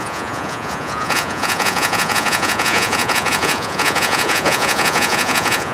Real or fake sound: fake